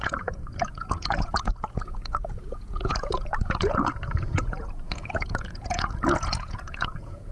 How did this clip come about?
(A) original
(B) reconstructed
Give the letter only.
B